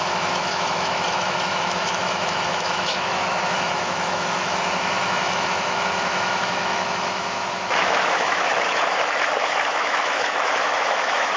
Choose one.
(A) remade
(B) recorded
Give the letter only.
A